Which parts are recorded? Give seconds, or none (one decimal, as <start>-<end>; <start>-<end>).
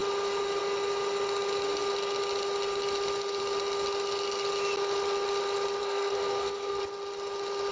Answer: 0.0-5.8; 6.8-7.7